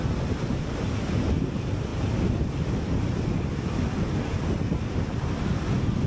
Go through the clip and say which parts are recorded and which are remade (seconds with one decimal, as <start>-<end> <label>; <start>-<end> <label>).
0.0-6.1 recorded